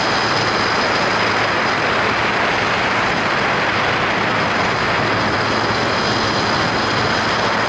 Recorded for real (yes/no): yes